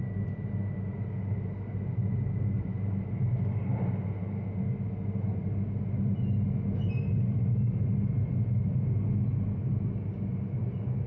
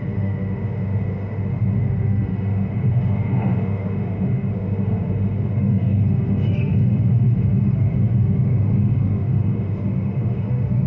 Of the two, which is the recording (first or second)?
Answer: first